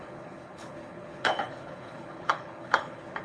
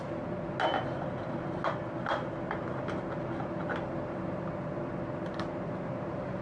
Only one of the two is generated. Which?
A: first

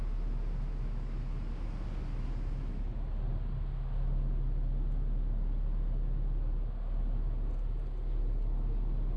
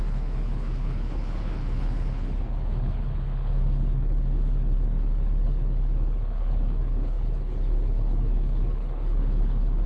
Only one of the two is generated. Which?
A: second